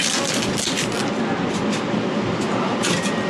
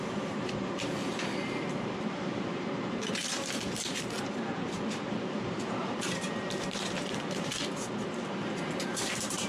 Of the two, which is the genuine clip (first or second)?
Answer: first